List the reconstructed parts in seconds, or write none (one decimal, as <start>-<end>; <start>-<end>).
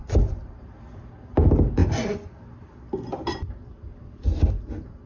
none